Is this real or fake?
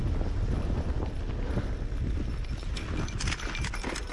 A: real